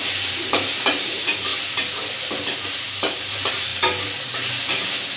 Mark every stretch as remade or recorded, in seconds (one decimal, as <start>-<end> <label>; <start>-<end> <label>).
0.0-1.5 remade; 1.5-2.1 recorded; 2.1-5.2 remade